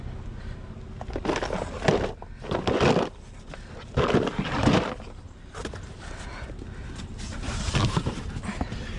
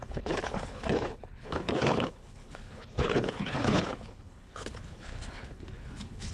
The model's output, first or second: second